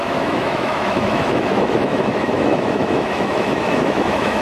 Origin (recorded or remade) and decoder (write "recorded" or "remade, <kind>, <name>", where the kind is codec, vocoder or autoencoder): remade, autoencoder, DAC-VAE